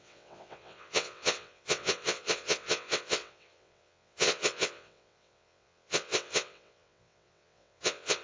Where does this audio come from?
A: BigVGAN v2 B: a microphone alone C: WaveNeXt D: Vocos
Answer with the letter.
C